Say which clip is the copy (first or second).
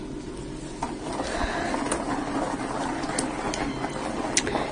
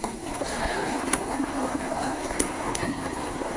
second